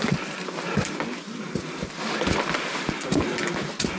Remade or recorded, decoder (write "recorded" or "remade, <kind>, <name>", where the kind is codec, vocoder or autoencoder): recorded